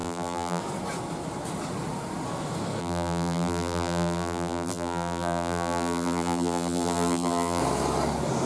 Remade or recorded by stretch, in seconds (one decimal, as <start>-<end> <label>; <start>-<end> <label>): 0.0-0.6 remade; 0.6-2.8 recorded; 2.8-7.6 remade; 7.6-8.5 recorded